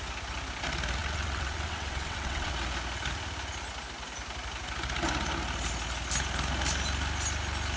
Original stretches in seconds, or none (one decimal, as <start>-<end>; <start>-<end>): 0.0-1.0; 2.5-7.8